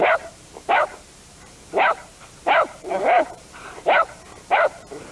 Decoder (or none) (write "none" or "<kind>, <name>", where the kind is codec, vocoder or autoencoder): vocoder, BigVGAN v2